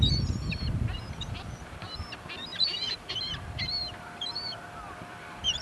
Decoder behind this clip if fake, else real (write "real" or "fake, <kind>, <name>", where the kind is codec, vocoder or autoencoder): fake, vocoder, BigVGAN v2